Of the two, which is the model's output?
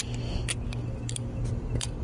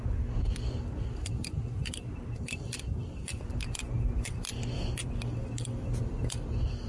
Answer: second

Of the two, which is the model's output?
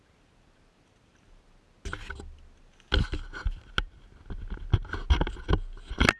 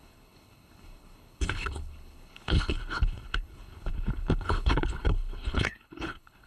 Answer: second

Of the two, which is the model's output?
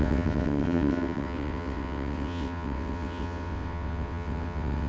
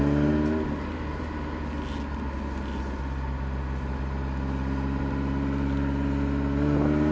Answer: first